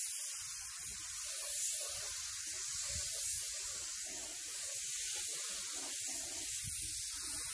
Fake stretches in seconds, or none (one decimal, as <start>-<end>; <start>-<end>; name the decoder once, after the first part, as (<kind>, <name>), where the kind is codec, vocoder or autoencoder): none